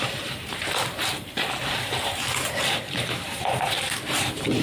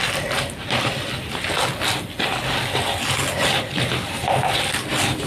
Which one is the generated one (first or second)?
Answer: first